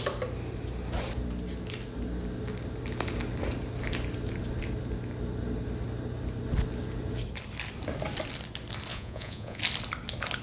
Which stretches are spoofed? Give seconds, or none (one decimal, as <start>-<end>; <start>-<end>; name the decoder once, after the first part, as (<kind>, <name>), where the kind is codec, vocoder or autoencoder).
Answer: 8.9-9.6 (vocoder, Vocos)